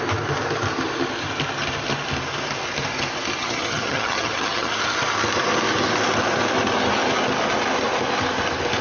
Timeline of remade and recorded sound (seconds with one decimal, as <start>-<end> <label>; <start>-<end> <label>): 0.0-3.4 recorded; 3.4-4.7 remade; 4.7-8.8 recorded